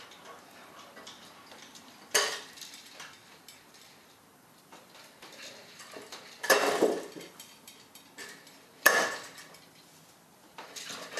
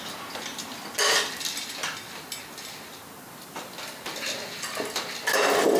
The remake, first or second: first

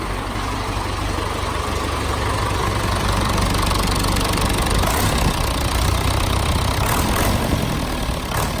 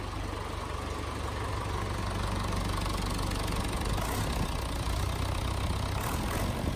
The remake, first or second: first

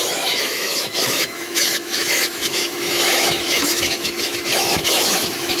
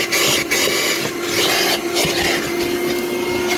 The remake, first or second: first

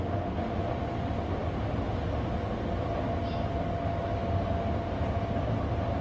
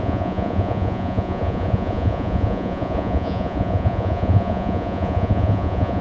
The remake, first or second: second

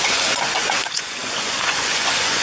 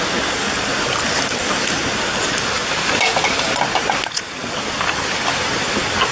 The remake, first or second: first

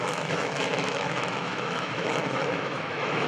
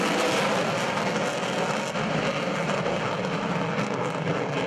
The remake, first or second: first